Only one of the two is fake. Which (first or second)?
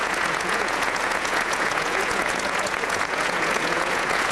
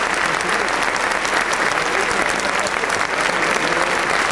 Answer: first